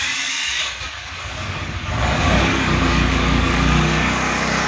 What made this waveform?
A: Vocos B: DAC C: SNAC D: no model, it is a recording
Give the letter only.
B